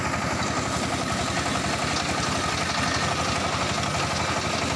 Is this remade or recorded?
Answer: recorded